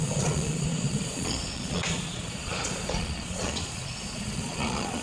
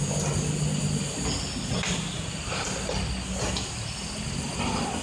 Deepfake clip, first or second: first